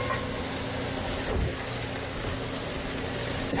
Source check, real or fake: real